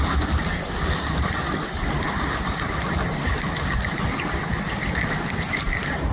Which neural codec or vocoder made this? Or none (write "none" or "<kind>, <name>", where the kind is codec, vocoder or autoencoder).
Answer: none